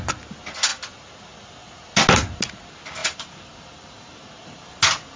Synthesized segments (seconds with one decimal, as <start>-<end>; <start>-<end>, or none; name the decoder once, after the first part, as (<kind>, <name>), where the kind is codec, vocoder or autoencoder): 3.0-4.8 (vocoder, BigVGAN v2)

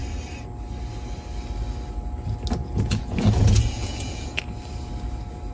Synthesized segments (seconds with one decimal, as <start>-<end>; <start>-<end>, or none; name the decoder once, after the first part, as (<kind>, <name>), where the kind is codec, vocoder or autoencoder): 2.6-4.4 (vocoder, Vocos)

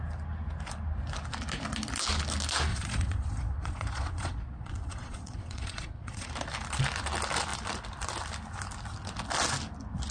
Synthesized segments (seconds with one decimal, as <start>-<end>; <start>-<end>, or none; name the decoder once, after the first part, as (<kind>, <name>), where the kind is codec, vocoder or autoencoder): 2.7-6.3 (vocoder, Vocos)

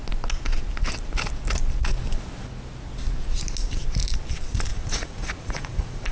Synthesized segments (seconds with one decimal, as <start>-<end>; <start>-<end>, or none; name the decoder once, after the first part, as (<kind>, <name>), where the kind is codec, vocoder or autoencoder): 4.7-6.1 (vocoder, Vocos)

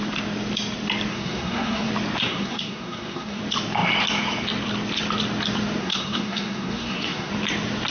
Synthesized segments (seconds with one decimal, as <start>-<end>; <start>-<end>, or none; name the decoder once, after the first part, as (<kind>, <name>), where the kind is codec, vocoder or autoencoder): 1.1-1.9 (codec, SNAC); 2.3-3.4; 5.8-7.3

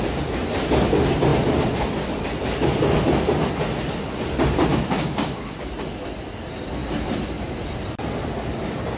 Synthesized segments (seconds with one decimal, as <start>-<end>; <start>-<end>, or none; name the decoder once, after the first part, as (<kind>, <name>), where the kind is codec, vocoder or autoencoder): 4.7-5.7 (codec, DAC)